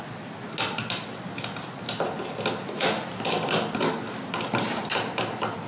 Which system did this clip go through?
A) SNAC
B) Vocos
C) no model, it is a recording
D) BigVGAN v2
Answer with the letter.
C